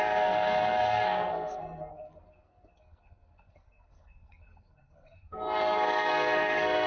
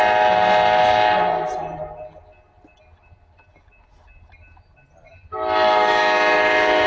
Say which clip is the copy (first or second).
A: first